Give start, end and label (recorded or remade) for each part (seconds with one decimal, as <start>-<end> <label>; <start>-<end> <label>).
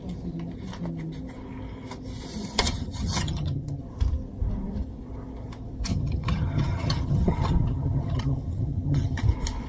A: 0.0-2.6 recorded; 2.6-3.8 remade; 3.8-5.9 recorded; 5.9-9.2 remade; 9.2-9.7 recorded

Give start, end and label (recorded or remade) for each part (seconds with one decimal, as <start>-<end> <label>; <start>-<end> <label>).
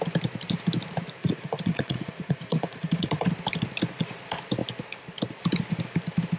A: 0.0-1.2 recorded; 1.2-3.3 remade; 3.3-6.4 recorded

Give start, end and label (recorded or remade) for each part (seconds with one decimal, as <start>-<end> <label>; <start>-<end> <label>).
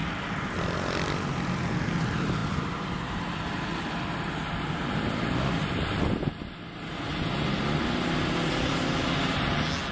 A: 0.0-9.9 recorded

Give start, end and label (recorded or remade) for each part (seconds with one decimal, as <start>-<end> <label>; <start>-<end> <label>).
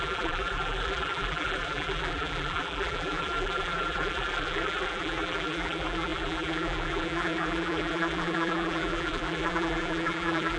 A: 0.0-10.6 remade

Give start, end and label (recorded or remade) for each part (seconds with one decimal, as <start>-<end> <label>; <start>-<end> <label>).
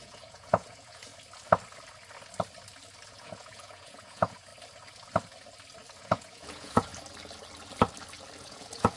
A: 0.0-1.1 remade; 1.1-3.1 recorded; 3.1-4.5 remade; 4.5-6.0 recorded; 6.0-6.9 remade; 6.9-8.4 recorded; 8.4-9.0 remade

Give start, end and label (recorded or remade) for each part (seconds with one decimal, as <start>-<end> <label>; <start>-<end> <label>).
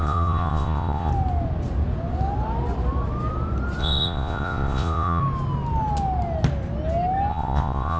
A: 0.0-1.1 remade; 1.1-3.8 recorded; 3.8-5.2 remade; 5.2-7.3 recorded; 7.3-8.0 remade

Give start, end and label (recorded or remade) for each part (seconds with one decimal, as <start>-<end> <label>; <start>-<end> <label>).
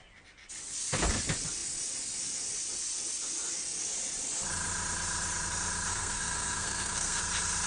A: 0.0-5.9 recorded; 5.9-7.2 remade; 7.2-7.7 recorded